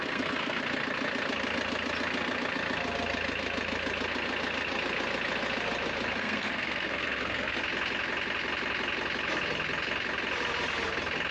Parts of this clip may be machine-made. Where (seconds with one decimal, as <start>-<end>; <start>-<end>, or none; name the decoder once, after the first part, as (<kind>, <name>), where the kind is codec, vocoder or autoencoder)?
0.0-0.6 (codec, SNAC); 6.2-7.6